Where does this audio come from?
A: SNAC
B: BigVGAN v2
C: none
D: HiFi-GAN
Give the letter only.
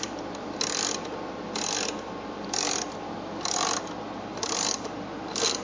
C